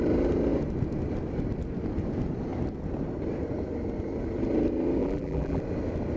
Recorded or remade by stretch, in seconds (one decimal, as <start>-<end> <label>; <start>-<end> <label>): 0.0-5.0 recorded; 5.0-5.6 remade; 5.6-6.2 recorded